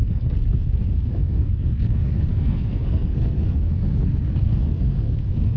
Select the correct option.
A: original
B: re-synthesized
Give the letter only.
B